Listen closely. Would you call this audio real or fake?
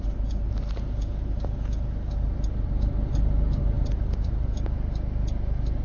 real